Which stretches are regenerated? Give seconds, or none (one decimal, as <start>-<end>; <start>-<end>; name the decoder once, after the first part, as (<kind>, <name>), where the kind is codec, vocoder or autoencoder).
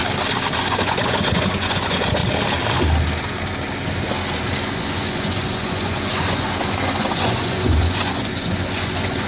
0.6-2.2 (vocoder, Vocos); 4.6-9.3